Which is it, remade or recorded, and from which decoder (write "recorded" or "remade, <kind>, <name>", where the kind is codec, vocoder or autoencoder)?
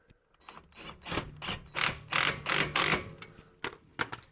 recorded